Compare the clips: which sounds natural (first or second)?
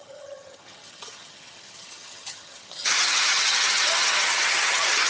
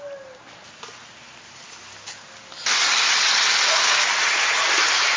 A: second